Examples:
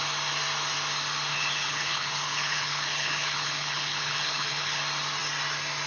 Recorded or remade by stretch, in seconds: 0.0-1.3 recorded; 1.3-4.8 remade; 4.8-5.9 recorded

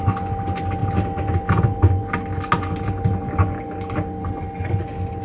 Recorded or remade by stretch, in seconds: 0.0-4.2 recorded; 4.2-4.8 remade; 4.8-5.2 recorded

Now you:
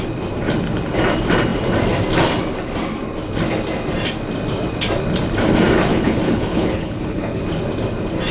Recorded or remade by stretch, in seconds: 0.0-5.9 recorded; 5.9-7.4 remade; 7.4-8.3 recorded

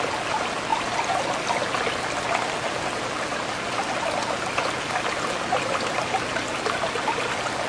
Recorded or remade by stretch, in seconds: 0.0-7.7 recorded

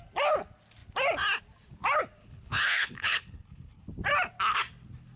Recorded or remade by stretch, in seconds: 0.0-2.2 recorded; 2.2-3.8 remade; 3.8-5.2 recorded

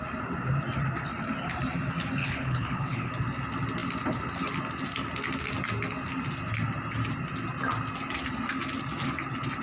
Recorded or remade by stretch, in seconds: 0.0-2.2 recorded; 2.2-3.1 remade; 3.1-9.6 recorded